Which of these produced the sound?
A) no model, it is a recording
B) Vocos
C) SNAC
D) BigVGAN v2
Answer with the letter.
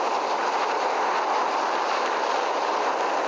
A